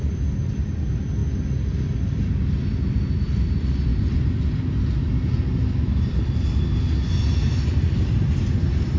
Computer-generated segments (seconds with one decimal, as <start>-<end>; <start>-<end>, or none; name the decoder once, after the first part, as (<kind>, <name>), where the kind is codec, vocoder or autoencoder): none